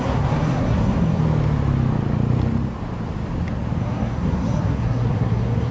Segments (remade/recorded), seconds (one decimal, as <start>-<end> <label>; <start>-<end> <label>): 0.0-1.2 remade; 1.2-3.8 recorded; 3.8-5.7 remade